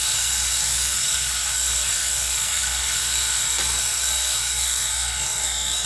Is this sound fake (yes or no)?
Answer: yes